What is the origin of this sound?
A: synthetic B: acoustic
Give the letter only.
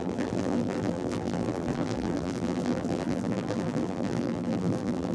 A